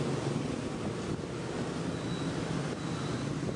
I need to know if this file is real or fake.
real